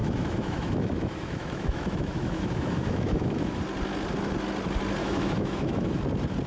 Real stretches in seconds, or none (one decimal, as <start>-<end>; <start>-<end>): 3.6-5.0; 6.0-6.5